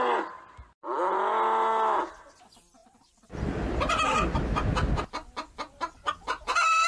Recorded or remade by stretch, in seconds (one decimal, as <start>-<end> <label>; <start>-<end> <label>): 0.0-6.9 recorded